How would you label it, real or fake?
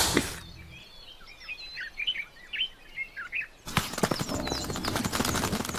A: real